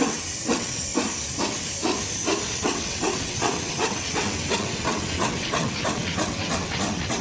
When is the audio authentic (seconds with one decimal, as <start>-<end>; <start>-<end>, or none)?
0.9-2.5